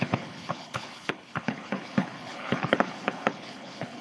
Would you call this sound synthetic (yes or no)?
yes